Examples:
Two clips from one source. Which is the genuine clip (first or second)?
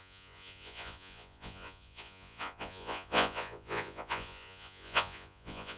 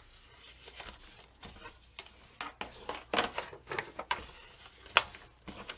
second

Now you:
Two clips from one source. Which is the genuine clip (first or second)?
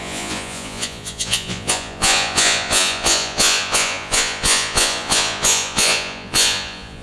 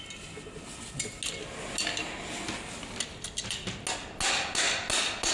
second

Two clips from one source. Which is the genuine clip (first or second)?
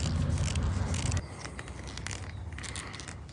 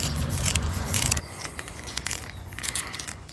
first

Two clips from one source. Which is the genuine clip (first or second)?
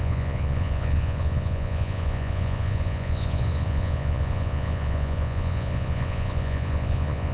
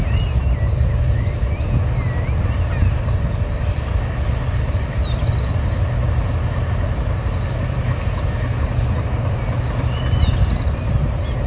second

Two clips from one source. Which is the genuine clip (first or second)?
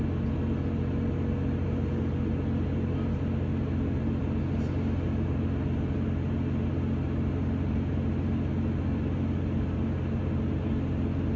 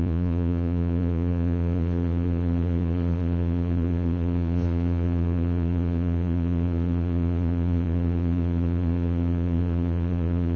first